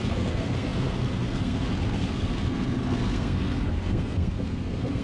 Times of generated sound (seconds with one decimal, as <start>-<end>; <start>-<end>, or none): 0.0-5.0